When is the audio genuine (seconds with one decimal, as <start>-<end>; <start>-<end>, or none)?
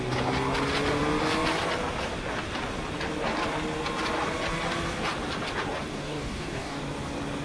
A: 0.0-5.9; 6.8-7.4